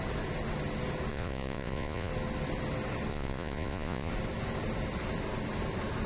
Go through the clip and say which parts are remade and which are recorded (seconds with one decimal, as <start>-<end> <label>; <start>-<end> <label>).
0.0-1.1 recorded; 1.1-2.1 remade; 2.1-3.1 recorded; 3.1-4.1 remade; 4.1-6.1 recorded